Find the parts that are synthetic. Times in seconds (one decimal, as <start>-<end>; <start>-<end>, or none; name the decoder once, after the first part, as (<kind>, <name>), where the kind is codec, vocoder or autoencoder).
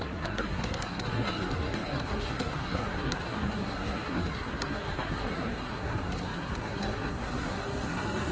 0.0-8.3 (codec, SNAC)